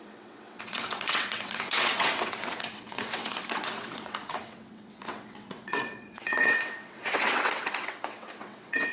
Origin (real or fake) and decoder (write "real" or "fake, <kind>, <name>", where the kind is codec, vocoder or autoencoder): fake, vocoder, WaveNeXt